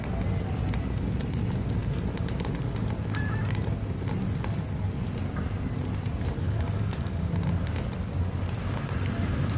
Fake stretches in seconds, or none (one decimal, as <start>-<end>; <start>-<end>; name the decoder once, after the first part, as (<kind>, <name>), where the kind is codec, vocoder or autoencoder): 6.4-7.3 (codec, DAC)